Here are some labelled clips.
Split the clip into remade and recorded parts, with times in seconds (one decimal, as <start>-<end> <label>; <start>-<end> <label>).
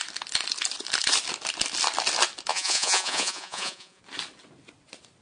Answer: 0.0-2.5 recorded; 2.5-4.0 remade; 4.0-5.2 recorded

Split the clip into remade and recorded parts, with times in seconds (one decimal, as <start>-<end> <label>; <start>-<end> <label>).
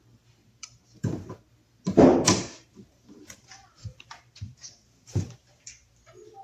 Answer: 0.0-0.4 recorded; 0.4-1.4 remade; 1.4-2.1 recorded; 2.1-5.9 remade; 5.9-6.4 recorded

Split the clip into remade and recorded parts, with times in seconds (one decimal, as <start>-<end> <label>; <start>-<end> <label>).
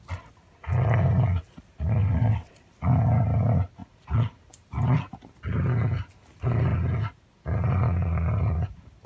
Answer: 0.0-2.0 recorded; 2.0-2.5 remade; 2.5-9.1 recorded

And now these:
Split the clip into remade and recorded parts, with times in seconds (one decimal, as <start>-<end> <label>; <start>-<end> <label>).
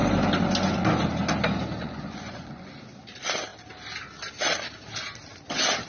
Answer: 0.0-1.8 recorded; 1.8-2.7 remade; 2.7-5.9 recorded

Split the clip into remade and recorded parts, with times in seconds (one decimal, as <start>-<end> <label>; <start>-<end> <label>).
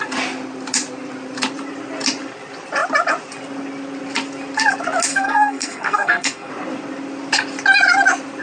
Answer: 0.0-5.1 recorded; 5.1-6.5 remade; 6.5-8.4 recorded